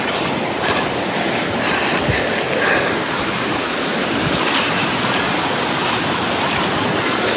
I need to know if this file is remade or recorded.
recorded